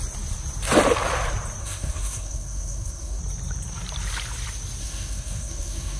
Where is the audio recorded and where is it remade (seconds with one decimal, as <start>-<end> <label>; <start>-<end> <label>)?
0.0-1.6 recorded; 1.6-3.2 remade; 3.2-4.8 recorded; 4.8-6.0 remade